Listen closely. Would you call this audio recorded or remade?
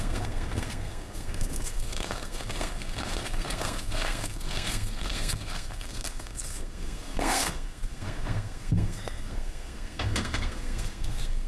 remade